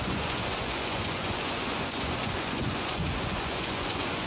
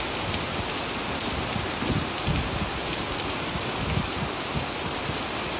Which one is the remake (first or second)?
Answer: first